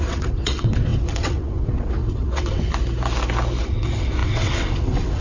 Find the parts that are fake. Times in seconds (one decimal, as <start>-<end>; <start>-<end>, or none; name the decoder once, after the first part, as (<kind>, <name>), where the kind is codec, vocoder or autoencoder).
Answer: 0.0-2.7 (vocoder, WaveNeXt); 3.6-5.2